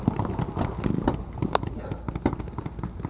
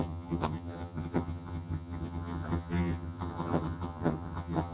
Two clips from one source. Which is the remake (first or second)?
second